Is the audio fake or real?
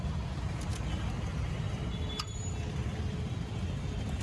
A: real